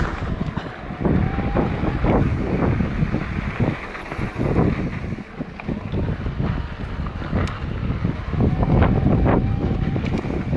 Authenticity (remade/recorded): recorded